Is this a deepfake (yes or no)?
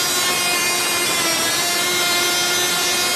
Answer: no